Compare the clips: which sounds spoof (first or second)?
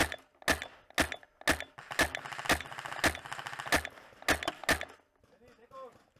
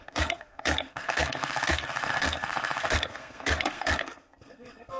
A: second